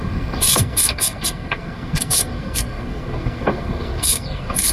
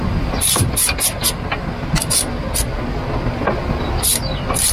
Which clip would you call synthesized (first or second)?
first